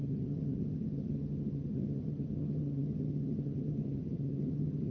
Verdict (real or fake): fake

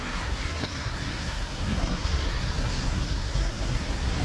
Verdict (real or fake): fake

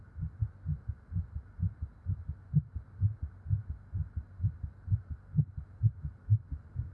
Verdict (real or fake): real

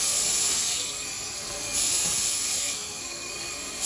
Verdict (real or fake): fake